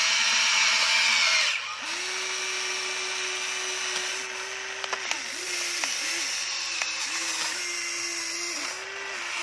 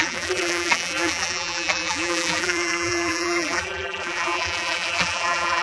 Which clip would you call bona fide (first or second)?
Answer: first